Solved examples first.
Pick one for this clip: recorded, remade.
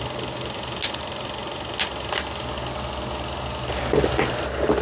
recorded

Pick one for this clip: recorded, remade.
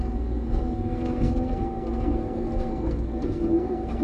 remade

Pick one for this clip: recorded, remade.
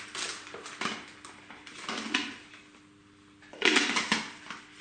recorded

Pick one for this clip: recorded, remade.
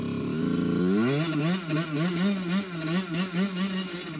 recorded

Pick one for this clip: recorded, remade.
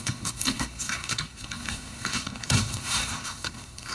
remade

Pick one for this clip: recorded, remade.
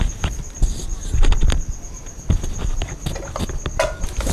recorded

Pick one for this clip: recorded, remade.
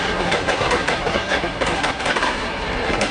remade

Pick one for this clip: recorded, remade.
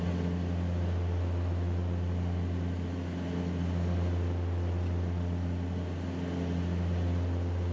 recorded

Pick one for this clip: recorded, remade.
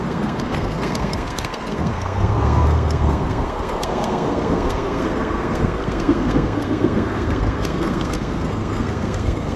remade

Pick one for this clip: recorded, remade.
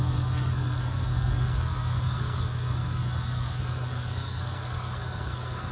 remade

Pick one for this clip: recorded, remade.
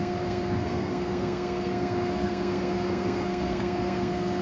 remade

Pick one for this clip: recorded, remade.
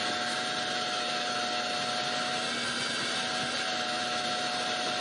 recorded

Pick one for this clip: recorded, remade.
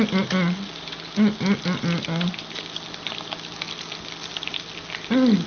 recorded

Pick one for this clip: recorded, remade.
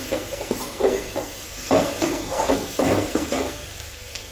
remade